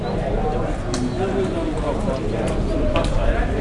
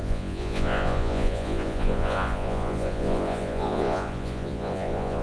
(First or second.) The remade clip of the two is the second